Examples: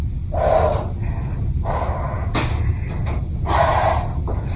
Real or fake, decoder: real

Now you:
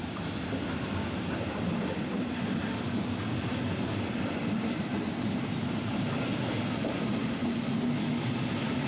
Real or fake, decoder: real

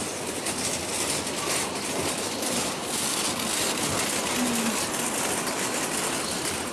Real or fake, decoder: real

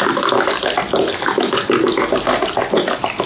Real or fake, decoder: real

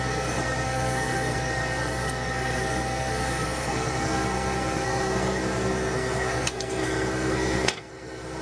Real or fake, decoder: fake, codec, SNAC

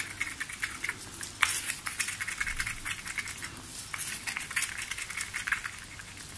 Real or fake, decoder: real